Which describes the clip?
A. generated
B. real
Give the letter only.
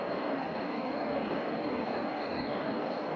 A